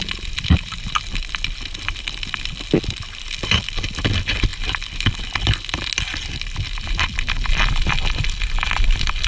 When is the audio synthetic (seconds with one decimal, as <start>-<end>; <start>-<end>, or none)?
none

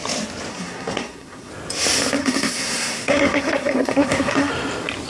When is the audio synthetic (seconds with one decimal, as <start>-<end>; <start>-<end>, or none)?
0.5-1.5; 2.2-4.5